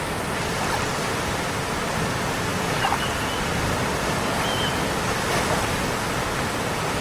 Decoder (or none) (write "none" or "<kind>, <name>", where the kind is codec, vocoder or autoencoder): none